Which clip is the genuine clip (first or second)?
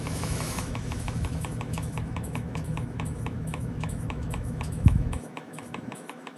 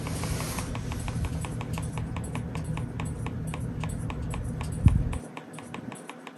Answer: second